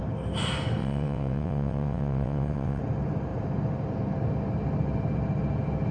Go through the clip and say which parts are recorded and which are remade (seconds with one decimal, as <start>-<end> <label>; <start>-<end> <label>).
0.0-0.8 recorded; 0.8-2.8 remade; 2.8-5.9 recorded